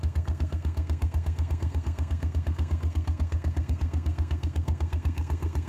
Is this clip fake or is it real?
fake